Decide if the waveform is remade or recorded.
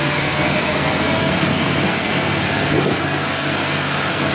remade